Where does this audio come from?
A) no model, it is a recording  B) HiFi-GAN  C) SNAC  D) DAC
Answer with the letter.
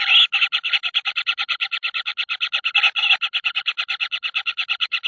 A